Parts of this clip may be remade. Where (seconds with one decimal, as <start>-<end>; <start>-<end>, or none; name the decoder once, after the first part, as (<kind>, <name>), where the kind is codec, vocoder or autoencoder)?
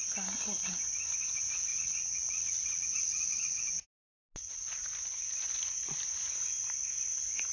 1.7-3.6 (vocoder, WaveNeXt)